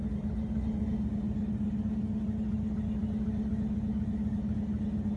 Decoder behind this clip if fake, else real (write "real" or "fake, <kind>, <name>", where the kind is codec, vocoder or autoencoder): real